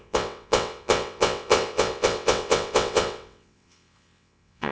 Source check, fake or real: fake